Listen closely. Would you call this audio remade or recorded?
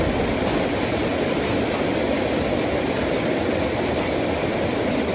recorded